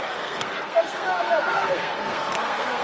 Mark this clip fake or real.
fake